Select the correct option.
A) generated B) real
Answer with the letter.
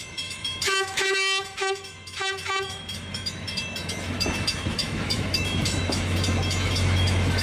A